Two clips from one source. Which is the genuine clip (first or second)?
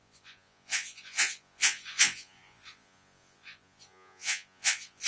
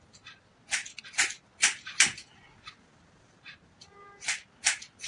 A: second